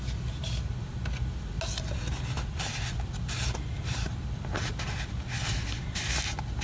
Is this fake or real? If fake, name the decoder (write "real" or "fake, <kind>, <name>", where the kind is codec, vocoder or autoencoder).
real